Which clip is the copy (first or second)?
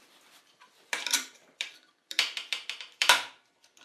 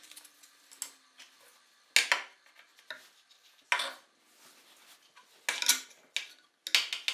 first